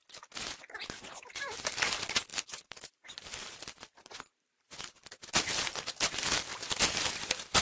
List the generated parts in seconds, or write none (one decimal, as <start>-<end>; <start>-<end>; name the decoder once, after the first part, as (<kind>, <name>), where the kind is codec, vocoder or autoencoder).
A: 0.6-7.6 (vocoder, BigVGAN v2)